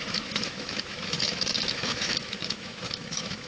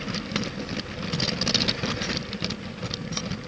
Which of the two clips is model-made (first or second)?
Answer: first